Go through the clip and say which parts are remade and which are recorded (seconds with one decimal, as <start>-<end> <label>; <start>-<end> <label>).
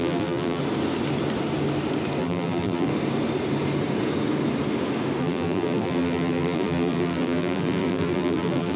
0.0-0.6 remade; 0.6-2.2 recorded; 2.2-2.9 remade; 2.9-5.2 recorded; 5.2-8.8 remade